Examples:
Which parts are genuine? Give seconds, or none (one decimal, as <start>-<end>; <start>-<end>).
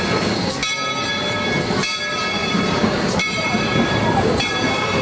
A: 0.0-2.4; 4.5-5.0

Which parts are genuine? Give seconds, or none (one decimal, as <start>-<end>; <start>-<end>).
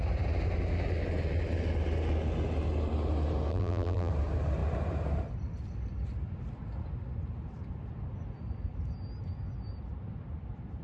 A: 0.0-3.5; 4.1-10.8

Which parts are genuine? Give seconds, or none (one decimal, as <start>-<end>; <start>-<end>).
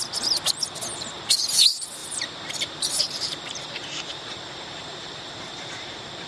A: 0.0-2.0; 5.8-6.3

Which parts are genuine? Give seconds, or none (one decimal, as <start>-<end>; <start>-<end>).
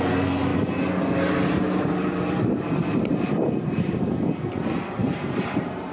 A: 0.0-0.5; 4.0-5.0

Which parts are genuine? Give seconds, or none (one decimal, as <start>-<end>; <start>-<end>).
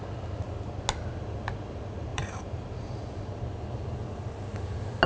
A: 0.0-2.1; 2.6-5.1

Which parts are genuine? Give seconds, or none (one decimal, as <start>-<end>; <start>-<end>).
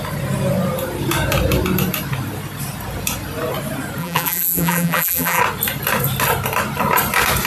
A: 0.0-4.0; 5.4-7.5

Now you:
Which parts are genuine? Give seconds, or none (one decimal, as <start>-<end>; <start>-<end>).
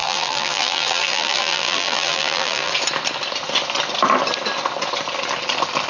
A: 2.7-5.9